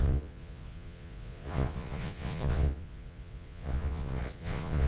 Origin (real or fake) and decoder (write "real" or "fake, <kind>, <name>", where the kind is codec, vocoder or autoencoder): fake, vocoder, Vocos